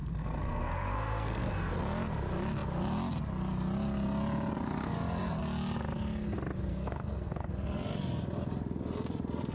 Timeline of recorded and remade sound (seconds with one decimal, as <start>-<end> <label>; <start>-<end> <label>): 0.0-1.5 remade; 1.5-6.7 recorded; 6.7-7.5 remade; 7.5-9.5 recorded